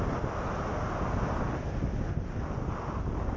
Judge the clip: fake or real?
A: real